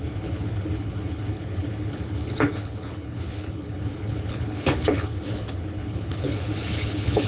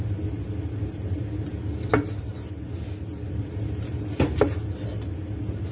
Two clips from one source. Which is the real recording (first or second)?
second